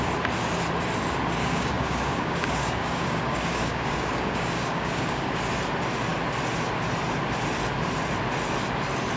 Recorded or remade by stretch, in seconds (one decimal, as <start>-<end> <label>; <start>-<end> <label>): 0.0-1.4 recorded; 1.4-5.4 remade; 5.4-9.2 recorded